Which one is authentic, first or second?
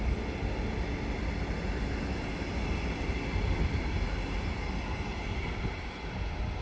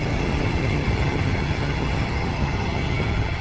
first